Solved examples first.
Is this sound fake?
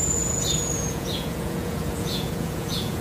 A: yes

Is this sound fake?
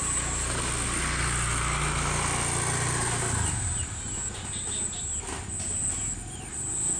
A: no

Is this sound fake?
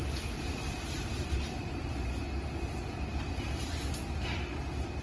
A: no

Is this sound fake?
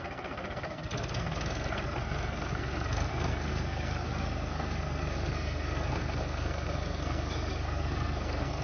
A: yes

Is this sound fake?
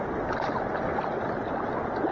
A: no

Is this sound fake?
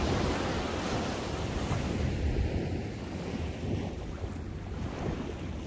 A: no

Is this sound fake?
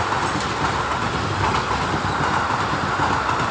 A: no